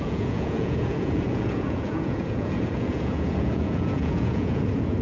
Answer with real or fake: fake